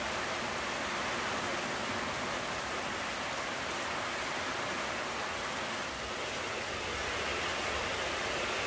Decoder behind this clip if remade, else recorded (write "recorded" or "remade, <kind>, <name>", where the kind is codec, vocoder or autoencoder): recorded